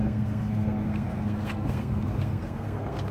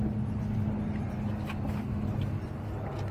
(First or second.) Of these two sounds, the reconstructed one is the first